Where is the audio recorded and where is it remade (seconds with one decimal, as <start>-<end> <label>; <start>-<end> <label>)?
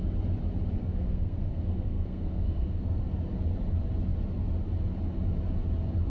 0.0-0.8 recorded; 0.8-3.0 remade; 3.0-6.1 recorded